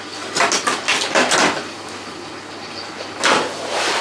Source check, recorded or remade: recorded